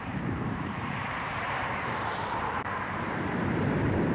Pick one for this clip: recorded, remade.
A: remade